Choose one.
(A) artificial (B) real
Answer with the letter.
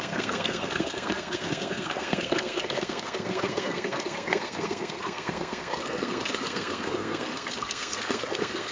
A